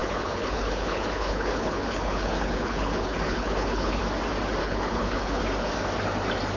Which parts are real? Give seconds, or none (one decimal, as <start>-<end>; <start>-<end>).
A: 4.0-4.6; 5.4-6.6